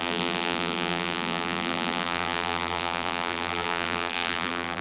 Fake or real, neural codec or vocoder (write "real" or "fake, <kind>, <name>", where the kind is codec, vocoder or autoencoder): fake, vocoder, BigVGAN v2